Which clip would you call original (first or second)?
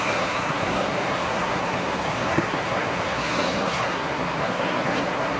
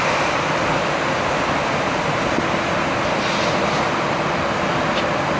second